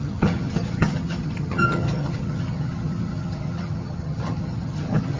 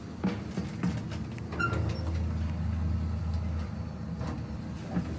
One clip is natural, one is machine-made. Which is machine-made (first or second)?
first